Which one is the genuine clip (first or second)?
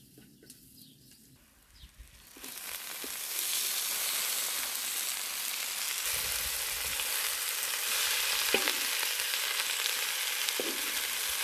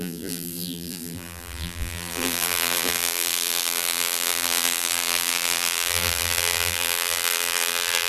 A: first